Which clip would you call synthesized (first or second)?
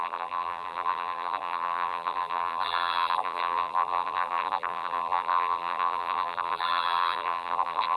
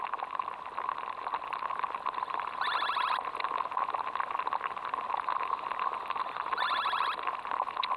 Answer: first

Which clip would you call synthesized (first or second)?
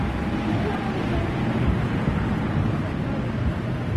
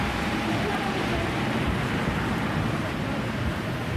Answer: second